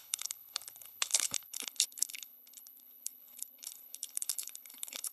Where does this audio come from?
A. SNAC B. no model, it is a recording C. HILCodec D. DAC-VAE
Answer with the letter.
C